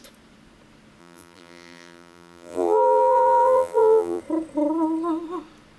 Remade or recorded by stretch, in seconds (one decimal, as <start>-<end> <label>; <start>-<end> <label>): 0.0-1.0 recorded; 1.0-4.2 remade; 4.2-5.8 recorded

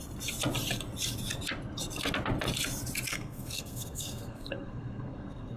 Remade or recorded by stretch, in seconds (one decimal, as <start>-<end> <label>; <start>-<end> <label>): 0.0-3.1 recorded; 3.1-5.6 remade

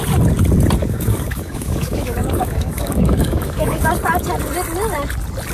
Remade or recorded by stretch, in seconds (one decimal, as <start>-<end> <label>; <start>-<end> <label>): 0.0-0.8 recorded; 0.8-3.9 remade; 3.9-5.5 recorded

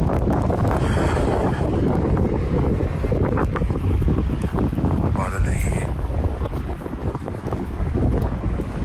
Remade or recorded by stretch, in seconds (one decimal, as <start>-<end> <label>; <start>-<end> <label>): 0.0-8.8 remade

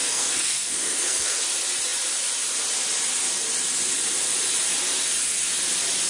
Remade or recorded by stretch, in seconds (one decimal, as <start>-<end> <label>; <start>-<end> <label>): 0.0-1.4 remade; 1.4-6.1 recorded